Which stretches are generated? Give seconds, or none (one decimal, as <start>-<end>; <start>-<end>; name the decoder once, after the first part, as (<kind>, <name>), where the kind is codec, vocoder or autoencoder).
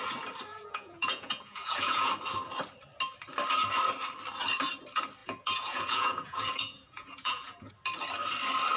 0.5-2.1 (vocoder, Vocos); 5.2-7.7